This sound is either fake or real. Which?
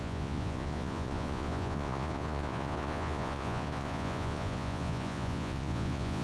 fake